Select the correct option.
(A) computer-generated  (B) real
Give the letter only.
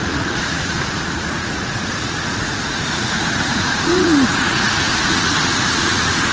A